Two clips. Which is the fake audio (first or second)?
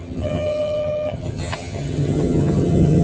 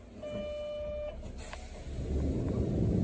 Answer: first